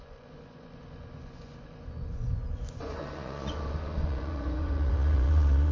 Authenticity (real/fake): fake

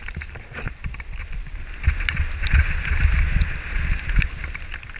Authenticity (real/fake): real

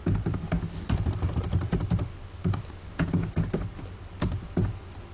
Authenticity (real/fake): real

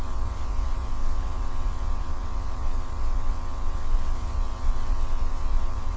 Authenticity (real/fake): fake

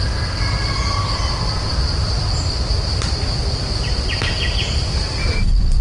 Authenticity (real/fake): real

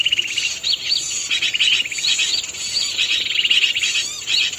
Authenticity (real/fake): real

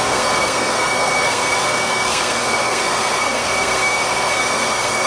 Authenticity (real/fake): fake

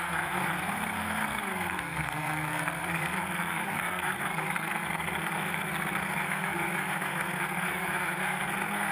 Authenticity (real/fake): fake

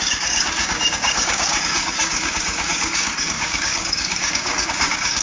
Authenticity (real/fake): fake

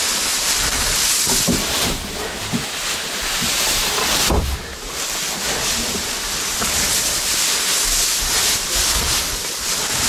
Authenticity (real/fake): real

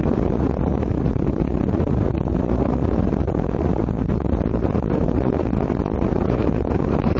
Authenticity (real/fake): fake